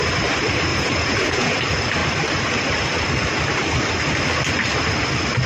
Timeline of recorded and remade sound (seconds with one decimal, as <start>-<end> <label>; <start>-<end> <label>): 0.0-0.7 recorded; 0.7-1.6 remade; 1.6-5.5 recorded